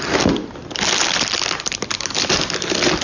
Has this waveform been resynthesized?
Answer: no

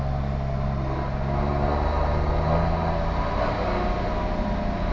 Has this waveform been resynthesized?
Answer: no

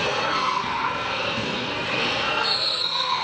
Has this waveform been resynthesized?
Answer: yes